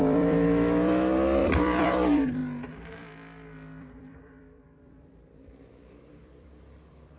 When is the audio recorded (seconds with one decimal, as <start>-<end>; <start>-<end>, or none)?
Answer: none